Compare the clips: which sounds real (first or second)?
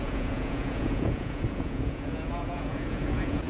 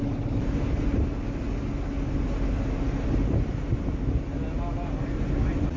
second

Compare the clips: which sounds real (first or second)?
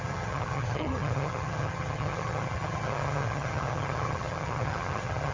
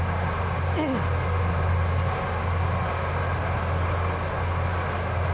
second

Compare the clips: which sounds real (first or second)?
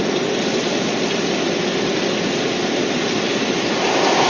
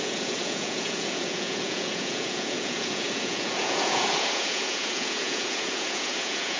first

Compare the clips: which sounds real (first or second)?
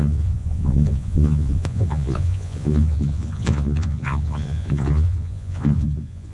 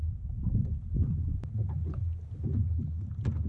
second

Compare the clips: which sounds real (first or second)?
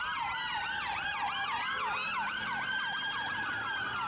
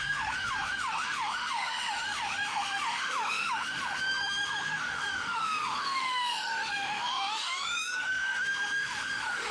first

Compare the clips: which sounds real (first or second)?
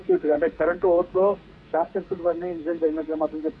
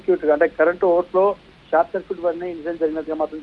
second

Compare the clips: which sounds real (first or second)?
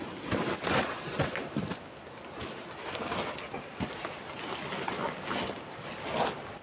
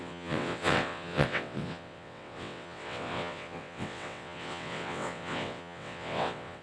first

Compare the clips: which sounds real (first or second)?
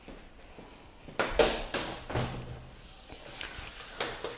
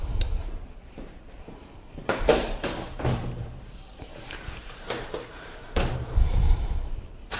first